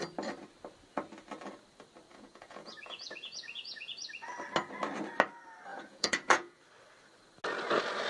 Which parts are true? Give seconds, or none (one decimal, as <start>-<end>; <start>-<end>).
0.0-2.1; 3.9-5.7; 6.6-8.1